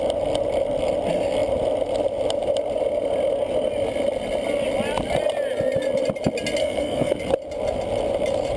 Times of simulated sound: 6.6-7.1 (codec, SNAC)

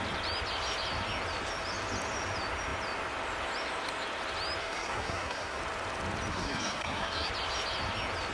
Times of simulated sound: 4.6-5.6 (codec, SNAC); 6.3-7.3

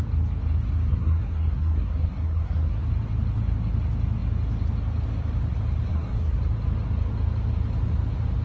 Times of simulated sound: 0.9-2.8 (codec, SNAC); 5.9-6.4

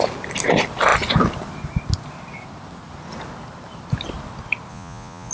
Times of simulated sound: 4.7-5.3 (vocoder, Vocos)

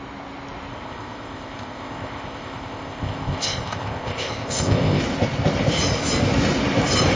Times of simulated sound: 0.7-5.0 (codec, ZipCodec)

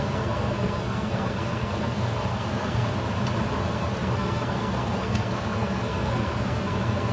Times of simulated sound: 0.0-2.9 (codec, SNAC); 3.5-7.1

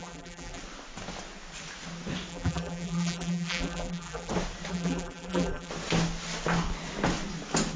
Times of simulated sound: 0.0-0.6 (vocoder, BigVGAN v2); 2.3-4.3; 4.7-5.7

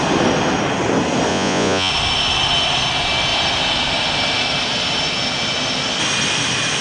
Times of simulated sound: 1.3-1.9 (vocoder, Vocos)